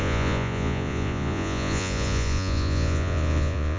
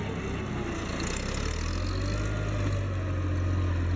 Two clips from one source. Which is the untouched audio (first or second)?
second